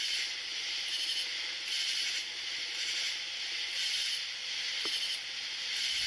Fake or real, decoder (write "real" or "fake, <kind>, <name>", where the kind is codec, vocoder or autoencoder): real